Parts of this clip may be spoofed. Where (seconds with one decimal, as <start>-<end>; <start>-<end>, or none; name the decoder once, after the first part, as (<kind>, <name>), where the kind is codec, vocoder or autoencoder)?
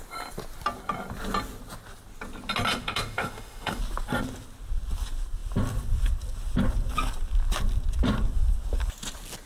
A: 2.7-3.8 (autoencoder, DAC-VAE)